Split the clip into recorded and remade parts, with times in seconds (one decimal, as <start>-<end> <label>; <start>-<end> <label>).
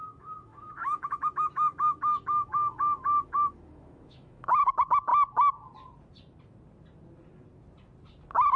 0.0-5.1 remade; 5.1-8.6 recorded